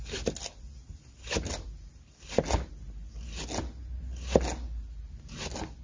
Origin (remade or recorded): recorded